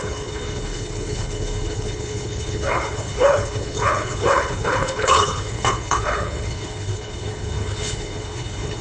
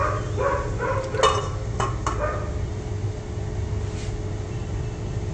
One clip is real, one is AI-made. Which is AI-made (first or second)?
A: first